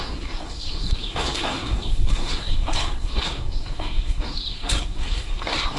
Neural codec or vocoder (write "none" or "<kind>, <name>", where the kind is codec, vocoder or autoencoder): codec, SNAC